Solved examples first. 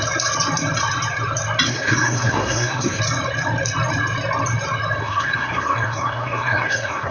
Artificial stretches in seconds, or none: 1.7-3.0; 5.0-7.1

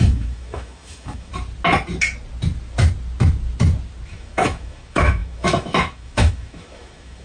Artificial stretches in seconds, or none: 0.0-1.3; 4.1-7.2